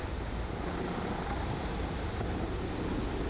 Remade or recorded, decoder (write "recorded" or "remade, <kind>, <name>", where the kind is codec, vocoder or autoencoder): recorded